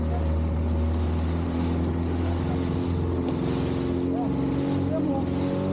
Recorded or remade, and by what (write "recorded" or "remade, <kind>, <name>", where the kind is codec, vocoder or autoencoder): recorded